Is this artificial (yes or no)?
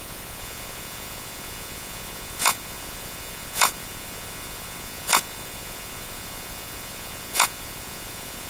yes